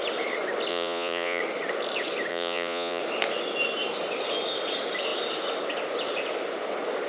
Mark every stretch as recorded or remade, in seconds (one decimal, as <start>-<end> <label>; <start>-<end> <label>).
0.0-0.7 recorded; 0.7-1.4 remade; 1.4-2.3 recorded; 2.3-3.0 remade; 3.0-7.1 recorded